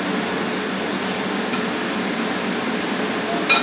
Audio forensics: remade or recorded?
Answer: recorded